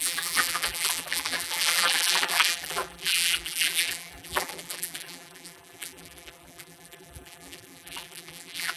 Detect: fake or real fake